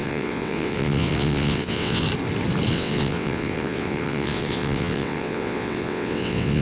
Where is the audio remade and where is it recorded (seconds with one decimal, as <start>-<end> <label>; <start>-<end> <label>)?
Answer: 0.0-2.0 remade; 2.0-2.7 recorded; 2.7-6.6 remade